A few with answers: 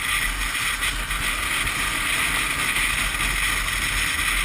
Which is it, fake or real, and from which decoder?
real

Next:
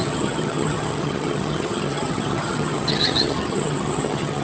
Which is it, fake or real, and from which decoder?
fake, vocoder, HiFi-GAN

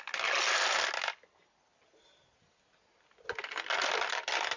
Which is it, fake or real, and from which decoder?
real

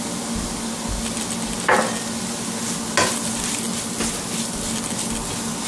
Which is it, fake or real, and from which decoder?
real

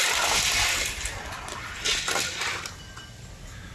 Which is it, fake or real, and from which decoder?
real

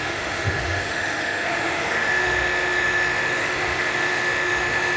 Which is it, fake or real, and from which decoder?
fake, autoencoder, DAC-VAE